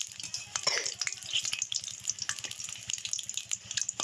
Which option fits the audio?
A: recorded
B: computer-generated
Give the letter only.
A